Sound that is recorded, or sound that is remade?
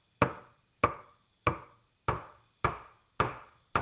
recorded